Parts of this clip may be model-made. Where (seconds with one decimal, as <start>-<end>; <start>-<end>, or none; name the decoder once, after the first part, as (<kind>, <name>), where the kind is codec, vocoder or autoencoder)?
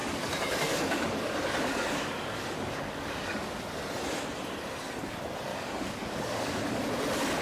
0.0-3.6 (codec, DAC); 5.5-6.8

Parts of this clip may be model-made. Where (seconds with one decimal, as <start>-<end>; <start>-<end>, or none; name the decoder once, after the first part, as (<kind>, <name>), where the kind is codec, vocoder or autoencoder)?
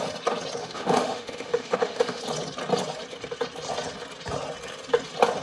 0.6-2.2 (autoencoder, DAC-VAE)